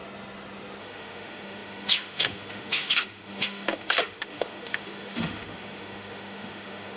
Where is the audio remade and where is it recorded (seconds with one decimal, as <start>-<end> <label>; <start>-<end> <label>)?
0.0-0.8 recorded; 0.8-7.0 remade